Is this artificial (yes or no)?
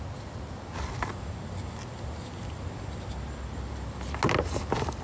no